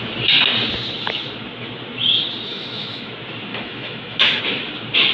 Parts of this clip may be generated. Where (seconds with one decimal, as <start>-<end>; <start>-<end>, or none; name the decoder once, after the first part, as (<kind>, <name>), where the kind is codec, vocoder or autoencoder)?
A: 2.5-3.1 (autoencoder, DAC-VAE); 3.5-4.4